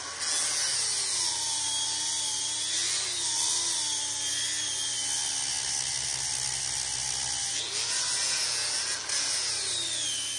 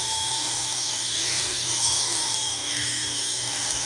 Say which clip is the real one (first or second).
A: first